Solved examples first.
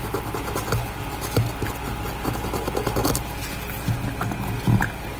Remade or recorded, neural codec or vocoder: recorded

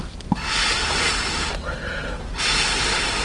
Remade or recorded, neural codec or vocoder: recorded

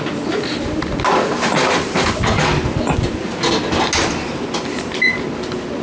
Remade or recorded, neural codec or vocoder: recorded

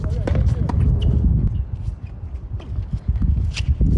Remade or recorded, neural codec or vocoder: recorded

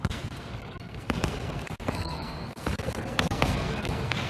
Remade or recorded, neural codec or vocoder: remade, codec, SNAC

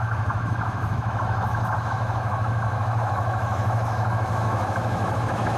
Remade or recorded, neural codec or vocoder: remade, autoencoder, DAC-VAE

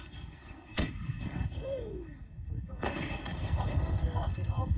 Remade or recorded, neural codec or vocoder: remade, codec, SNAC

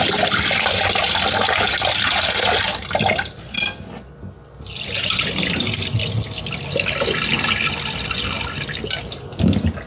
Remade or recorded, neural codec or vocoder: recorded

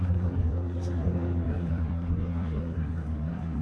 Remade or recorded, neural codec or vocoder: remade, codec, SNAC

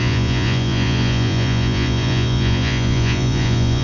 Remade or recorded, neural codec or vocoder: remade, vocoder, Vocos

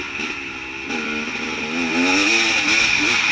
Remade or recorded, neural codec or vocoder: recorded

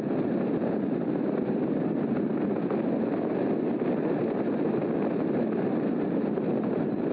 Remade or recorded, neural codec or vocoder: recorded